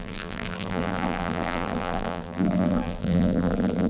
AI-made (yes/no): yes